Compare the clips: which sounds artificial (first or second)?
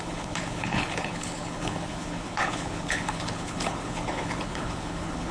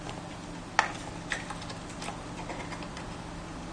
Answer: first